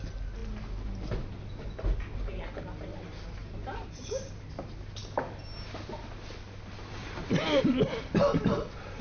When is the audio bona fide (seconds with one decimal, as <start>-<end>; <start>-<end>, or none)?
0.0-3.4; 4.5-7.0; 7.8-9.0